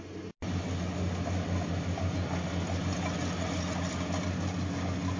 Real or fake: real